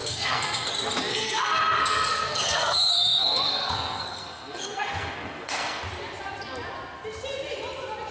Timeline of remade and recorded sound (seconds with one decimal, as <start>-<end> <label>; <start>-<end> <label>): 0.0-0.7 remade; 0.7-1.1 recorded; 1.1-5.8 remade; 5.8-8.1 recorded